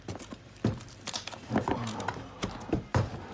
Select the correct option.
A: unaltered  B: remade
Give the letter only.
B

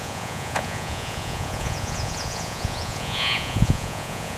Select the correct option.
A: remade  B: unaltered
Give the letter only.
A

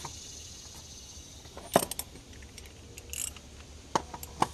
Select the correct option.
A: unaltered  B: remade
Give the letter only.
A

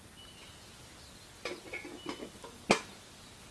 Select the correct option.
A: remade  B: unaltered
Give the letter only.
B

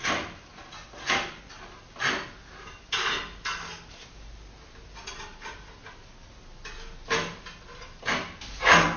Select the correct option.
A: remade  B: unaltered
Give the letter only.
B